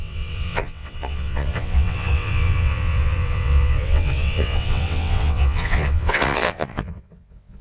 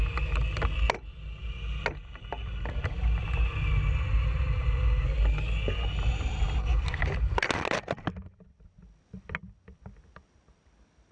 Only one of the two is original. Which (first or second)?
second